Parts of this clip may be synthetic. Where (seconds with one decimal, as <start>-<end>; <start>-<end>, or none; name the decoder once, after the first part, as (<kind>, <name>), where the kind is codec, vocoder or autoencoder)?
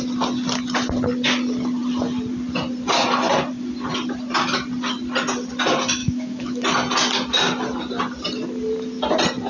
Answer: 6.0-6.6 (autoencoder, DAC-VAE)